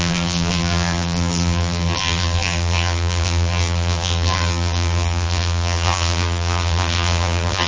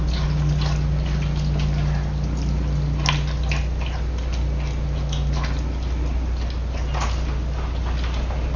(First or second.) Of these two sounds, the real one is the second